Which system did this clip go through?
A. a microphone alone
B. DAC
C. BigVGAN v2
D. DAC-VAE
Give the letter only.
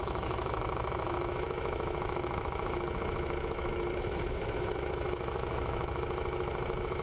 D